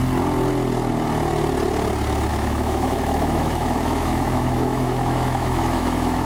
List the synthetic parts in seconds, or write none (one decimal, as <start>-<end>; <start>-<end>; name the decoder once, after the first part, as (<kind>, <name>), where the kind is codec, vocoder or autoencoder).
2.3-6.3 (autoencoder, DAC-VAE)